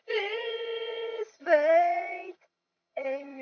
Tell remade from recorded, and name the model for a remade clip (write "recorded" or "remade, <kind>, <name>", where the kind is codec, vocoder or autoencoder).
remade, vocoder, HiFi-GAN